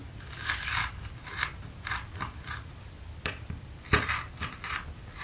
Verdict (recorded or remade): remade